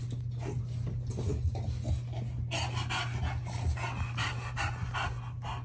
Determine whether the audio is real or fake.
real